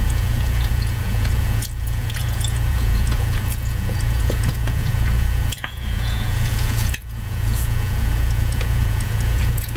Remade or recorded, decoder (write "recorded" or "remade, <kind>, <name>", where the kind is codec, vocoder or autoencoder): remade, vocoder, Vocos